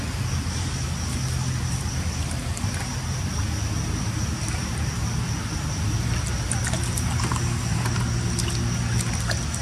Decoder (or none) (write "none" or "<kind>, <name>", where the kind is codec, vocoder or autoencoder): none